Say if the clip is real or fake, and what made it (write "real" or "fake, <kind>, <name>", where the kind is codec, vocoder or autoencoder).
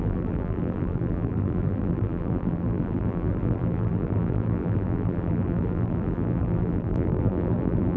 fake, vocoder, BigVGAN v2